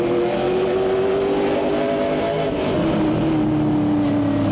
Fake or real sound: real